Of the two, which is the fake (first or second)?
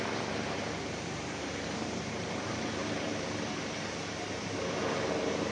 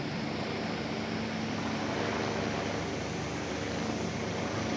first